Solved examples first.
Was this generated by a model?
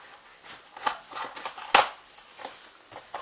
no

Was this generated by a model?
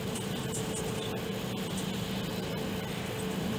no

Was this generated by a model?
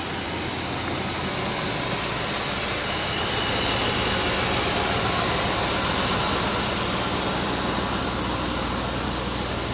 no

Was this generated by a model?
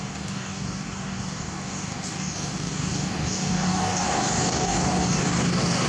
yes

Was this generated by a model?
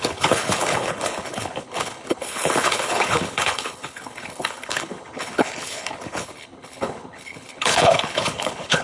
yes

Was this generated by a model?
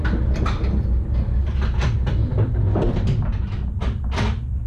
no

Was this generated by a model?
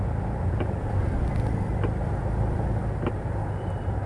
no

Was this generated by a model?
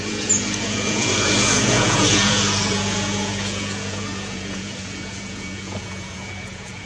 yes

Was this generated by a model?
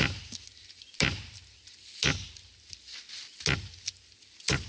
no